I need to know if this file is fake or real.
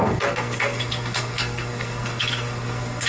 fake